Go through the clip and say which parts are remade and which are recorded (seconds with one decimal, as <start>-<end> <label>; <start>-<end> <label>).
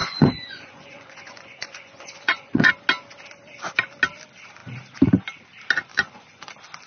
0.0-2.7 remade; 2.7-5.9 recorded; 5.9-6.5 remade; 6.5-6.9 recorded